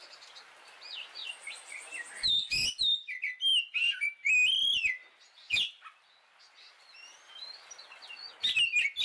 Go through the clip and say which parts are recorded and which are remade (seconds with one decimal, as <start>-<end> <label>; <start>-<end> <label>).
0.0-1.2 recorded; 1.2-2.1 remade; 2.1-9.0 recorded